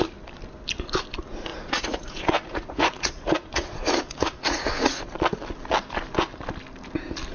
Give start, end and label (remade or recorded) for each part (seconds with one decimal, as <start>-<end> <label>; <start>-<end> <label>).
0.0-1.5 recorded; 1.5-5.0 remade; 5.0-7.3 recorded